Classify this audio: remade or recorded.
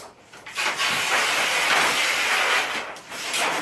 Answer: recorded